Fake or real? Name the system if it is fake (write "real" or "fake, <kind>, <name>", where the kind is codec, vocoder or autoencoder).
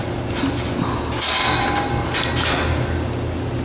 real